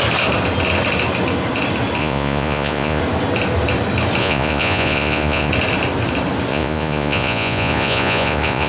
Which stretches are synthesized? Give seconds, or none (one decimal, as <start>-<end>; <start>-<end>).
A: 2.0-3.0; 4.2-5.5; 6.5-8.7